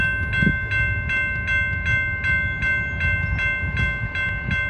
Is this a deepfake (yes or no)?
no